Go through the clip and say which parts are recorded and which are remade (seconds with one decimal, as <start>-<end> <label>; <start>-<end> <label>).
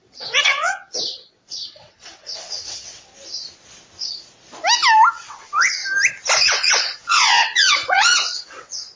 0.0-3.1 remade; 3.1-5.1 recorded; 5.1-5.8 remade; 5.8-6.4 recorded; 6.4-9.0 remade